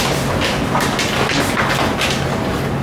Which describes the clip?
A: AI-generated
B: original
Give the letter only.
B